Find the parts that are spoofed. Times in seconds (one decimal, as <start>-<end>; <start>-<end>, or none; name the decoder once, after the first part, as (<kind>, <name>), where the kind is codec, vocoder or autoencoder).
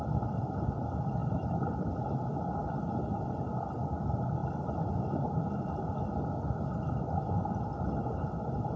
none